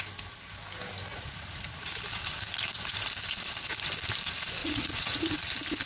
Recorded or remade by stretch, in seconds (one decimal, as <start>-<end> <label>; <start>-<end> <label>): 0.0-1.1 recorded; 1.1-1.9 remade; 1.9-4.6 recorded; 4.6-5.2 remade; 5.2-5.8 recorded